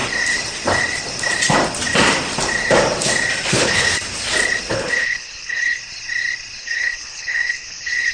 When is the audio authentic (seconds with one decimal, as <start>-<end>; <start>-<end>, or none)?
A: 0.0-3.5; 3.9-4.7; 5.8-6.6